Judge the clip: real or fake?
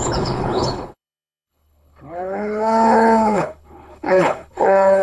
fake